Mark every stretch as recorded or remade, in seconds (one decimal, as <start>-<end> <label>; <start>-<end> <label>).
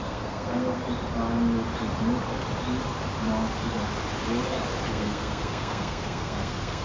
0.0-0.8 remade; 0.8-4.9 recorded; 4.9-6.8 remade